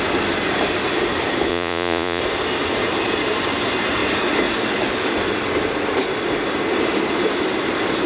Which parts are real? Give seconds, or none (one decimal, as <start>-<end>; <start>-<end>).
0.0-1.5; 2.2-8.1